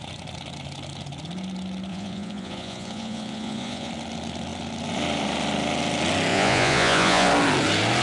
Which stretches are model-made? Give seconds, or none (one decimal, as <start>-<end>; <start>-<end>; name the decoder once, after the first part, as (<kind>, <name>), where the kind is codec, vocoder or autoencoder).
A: 1.9-3.9 (vocoder, Vocos); 6.3-7.3